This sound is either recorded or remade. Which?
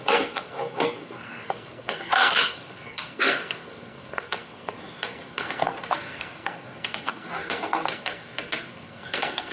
remade